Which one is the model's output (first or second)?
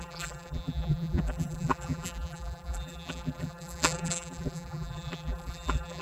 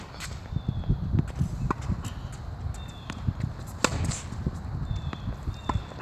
first